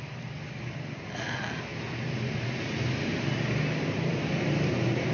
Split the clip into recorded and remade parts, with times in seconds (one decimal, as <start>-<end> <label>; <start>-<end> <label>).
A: 0.0-5.1 recorded